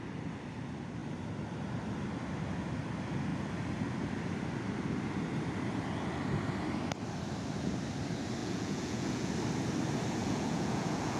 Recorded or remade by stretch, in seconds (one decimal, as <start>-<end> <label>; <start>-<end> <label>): 0.0-8.4 recorded; 8.4-9.3 remade; 9.3-10.2 recorded; 10.2-11.2 remade